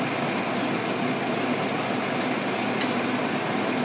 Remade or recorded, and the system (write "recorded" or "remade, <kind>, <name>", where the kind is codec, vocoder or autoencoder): remade, vocoder, BigVGAN v2